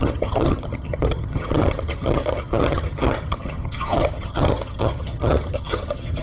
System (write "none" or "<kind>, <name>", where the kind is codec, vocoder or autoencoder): vocoder, HiFi-GAN